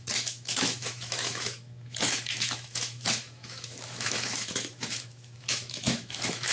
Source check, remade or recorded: remade